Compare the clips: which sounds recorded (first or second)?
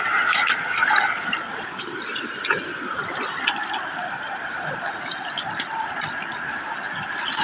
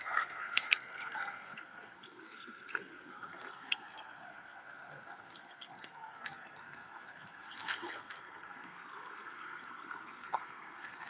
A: first